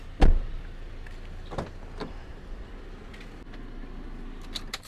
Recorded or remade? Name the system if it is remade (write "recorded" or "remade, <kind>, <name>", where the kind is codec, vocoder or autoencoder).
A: recorded